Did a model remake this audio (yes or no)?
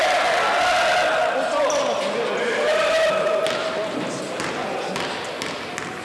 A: no